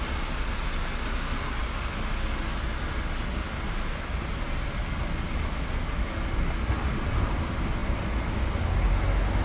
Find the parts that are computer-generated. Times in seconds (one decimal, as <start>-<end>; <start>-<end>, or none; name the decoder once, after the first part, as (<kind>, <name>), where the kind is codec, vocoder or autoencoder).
none